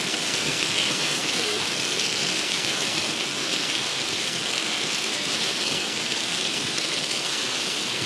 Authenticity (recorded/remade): remade